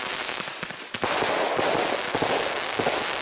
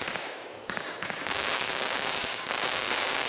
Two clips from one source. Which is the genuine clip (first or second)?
first